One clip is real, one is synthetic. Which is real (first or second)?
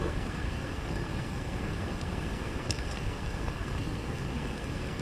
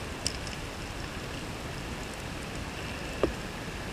second